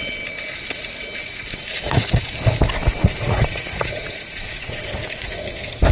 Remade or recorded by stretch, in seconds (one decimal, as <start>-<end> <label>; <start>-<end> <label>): 0.0-1.2 recorded; 1.2-2.3 remade; 2.3-2.8 recorded; 2.8-5.4 remade; 5.4-5.9 recorded